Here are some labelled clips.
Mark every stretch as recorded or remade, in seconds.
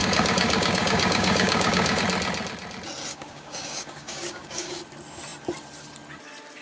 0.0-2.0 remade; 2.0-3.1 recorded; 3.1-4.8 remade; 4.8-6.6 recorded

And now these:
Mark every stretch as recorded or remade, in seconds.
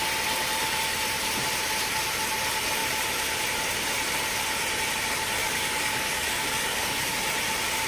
0.0-5.4 recorded; 5.4-7.2 remade; 7.2-7.9 recorded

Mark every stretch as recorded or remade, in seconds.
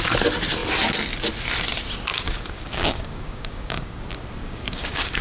0.0-2.1 recorded; 2.1-4.0 remade; 4.0-4.4 recorded; 4.4-5.2 remade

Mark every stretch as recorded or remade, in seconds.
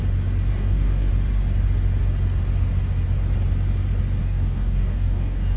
0.0-0.5 recorded; 0.5-1.1 remade; 1.1-4.2 recorded; 4.2-5.6 remade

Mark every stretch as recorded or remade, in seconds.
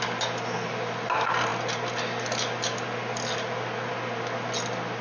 0.0-5.0 recorded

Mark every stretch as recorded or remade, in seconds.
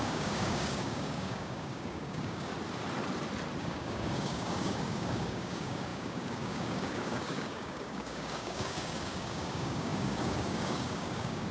0.0-2.5 remade; 2.5-3.6 recorded; 3.6-11.5 remade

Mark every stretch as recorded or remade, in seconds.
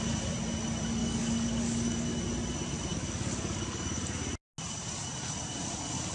0.0-1.0 recorded; 1.0-2.2 remade; 2.2-2.9 recorded; 2.9-4.0 remade; 4.0-6.1 recorded